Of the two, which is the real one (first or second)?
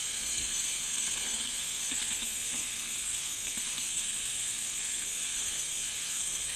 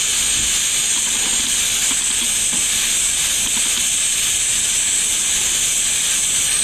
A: second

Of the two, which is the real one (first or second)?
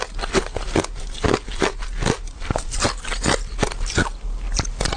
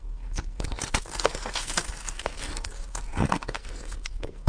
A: first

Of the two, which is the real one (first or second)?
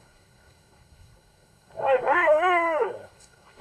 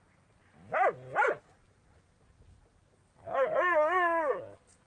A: second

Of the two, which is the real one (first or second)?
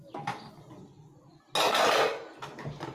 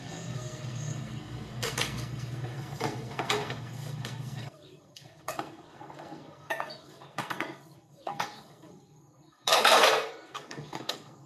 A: first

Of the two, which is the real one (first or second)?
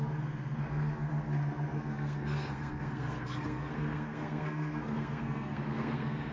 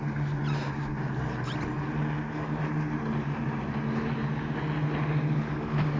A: second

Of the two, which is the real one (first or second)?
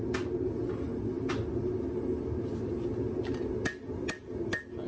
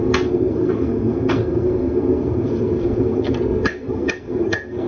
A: first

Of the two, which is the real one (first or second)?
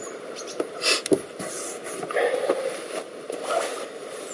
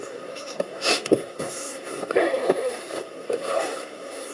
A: first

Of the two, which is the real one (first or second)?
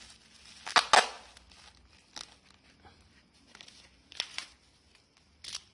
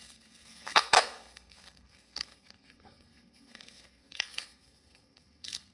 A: first